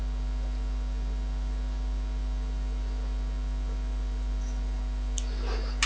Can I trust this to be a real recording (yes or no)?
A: yes